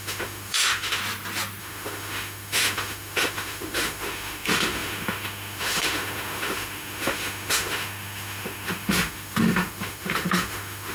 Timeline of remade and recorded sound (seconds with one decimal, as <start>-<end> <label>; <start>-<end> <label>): 0.0-1.0 remade; 1.0-1.6 recorded; 1.6-10.9 remade